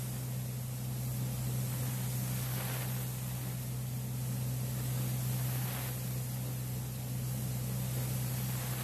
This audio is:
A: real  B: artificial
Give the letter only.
A